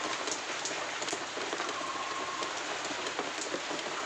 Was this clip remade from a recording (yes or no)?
no